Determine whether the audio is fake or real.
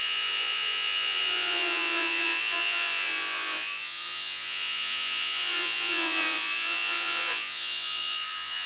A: fake